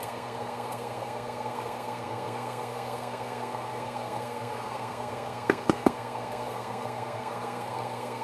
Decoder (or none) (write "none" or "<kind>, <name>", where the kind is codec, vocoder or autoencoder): codec, SNAC